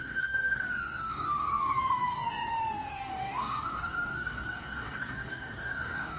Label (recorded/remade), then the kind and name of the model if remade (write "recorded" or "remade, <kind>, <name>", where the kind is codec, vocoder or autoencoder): remade, codec, DAC